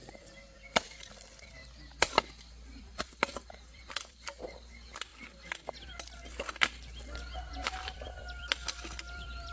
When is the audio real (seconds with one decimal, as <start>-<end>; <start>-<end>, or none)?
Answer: 1.6-2.8; 5.1-7.5